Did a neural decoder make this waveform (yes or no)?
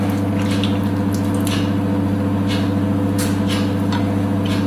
no